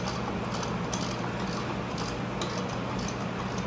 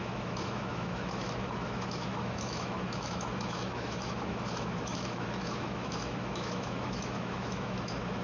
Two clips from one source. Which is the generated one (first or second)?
second